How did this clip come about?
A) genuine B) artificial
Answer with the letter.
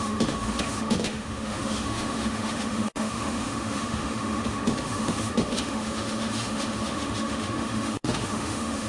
B